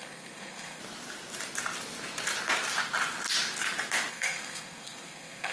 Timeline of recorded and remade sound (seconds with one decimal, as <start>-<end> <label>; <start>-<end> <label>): 0.0-0.8 remade; 0.8-4.1 recorded; 4.1-5.5 remade